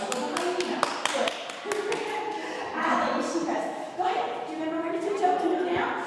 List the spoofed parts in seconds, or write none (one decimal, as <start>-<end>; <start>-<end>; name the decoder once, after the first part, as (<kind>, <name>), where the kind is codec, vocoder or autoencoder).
3.5-4.1 (autoencoder, DAC-VAE)